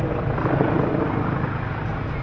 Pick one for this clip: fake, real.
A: real